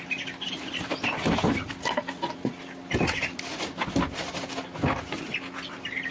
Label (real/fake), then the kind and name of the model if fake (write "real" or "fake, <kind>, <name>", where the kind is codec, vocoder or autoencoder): real